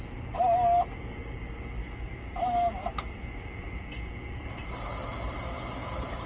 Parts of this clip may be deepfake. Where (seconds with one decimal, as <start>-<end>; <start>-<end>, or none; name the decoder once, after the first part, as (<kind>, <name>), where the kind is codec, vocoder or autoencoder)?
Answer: 1.8-3.6 (autoencoder, DAC-VAE)